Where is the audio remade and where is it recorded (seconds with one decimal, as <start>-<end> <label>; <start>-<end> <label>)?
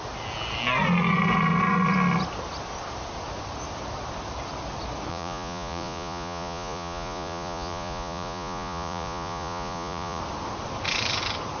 0.0-5.1 recorded; 5.1-10.2 remade; 10.2-11.6 recorded